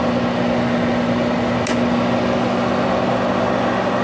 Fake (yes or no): no